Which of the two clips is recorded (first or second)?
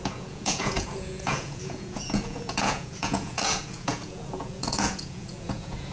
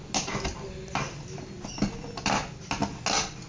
second